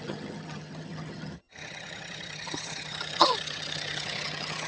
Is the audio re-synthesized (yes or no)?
yes